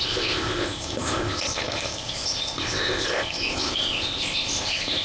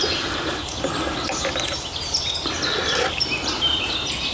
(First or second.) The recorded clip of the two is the second